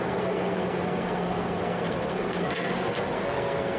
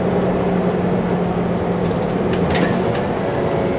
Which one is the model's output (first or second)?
first